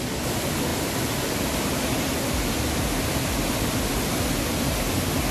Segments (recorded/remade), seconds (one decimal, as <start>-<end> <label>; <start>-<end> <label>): 0.0-5.3 recorded